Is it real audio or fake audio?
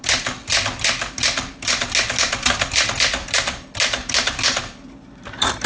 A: real